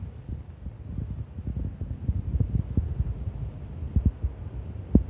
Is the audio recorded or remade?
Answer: recorded